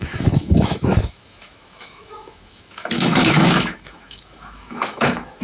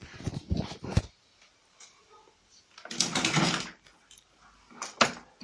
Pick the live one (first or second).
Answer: second